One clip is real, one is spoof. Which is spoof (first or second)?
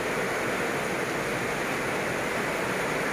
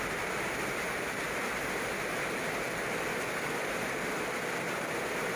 second